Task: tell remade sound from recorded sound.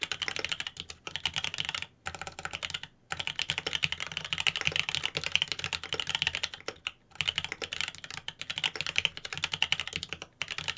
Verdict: recorded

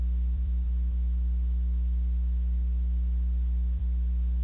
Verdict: remade